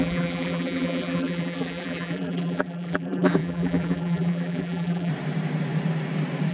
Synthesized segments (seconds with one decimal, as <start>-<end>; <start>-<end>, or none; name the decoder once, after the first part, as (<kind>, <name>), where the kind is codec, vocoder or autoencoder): 0.0-5.1 (vocoder, BigVGAN v2)